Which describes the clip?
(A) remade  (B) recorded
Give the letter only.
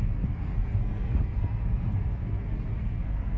A